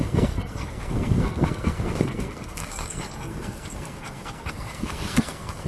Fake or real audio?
fake